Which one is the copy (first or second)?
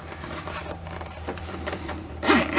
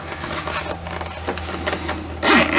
first